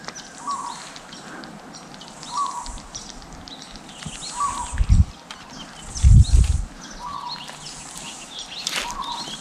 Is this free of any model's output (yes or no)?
yes